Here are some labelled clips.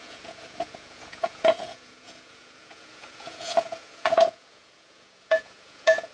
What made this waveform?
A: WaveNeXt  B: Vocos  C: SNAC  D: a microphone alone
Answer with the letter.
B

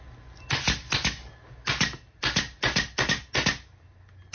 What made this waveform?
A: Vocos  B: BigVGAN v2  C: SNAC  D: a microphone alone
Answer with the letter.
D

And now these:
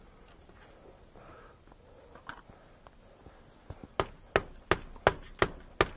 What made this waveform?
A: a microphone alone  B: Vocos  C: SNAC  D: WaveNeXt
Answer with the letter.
A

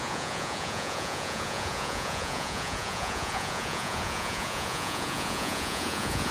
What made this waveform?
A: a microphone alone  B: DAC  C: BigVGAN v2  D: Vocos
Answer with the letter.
D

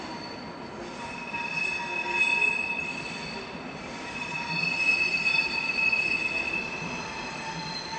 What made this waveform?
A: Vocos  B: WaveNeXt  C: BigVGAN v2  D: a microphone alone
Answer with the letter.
D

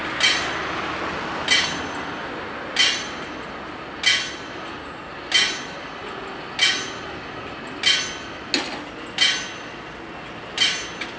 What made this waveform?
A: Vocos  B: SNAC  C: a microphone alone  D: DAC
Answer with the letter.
C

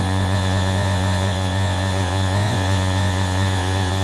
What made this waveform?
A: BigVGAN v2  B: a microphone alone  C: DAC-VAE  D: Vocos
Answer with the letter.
D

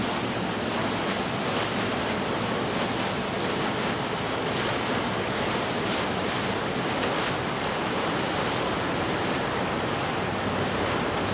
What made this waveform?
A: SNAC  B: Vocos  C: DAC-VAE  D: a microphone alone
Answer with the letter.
D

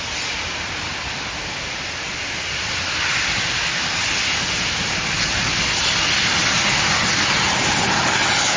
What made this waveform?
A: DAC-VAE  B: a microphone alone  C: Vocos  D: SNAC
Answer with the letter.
B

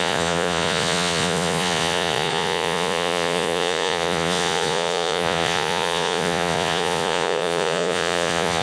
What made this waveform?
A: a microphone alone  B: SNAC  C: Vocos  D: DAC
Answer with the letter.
C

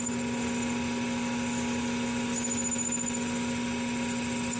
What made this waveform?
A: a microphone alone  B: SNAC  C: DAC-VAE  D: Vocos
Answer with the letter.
A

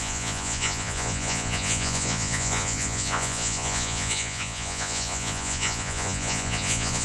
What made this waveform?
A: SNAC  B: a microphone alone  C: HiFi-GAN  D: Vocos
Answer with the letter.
D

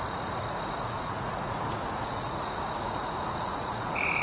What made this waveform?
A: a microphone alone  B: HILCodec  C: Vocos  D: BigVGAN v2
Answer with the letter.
C